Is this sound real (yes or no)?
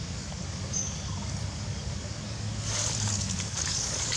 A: no